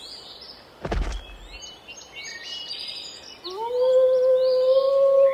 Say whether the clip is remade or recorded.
recorded